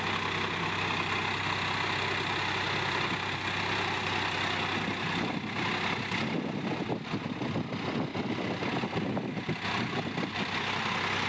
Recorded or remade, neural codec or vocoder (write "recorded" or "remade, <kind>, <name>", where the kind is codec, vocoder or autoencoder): recorded